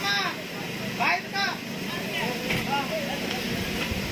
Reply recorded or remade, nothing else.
recorded